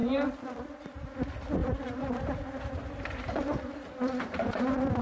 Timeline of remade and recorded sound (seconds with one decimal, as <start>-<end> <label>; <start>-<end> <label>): 0.0-0.8 remade; 0.8-1.6 recorded; 1.6-4.6 remade; 4.6-5.0 recorded

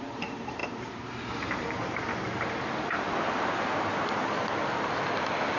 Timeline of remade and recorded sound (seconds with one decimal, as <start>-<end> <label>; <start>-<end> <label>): 0.0-4.6 remade; 4.6-5.6 recorded

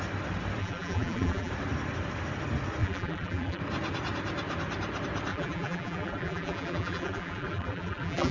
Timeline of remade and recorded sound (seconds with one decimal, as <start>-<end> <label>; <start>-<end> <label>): 0.0-0.6 recorded; 0.6-1.5 remade; 1.5-2.8 recorded; 2.8-3.6 remade; 3.6-5.3 recorded; 5.3-8.3 remade

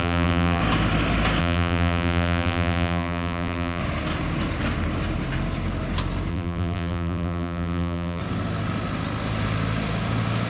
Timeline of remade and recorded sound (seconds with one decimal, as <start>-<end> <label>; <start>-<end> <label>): 0.0-0.6 remade; 0.6-1.4 recorded; 1.4-3.8 remade; 3.8-6.3 recorded; 6.3-8.2 remade; 8.2-10.5 recorded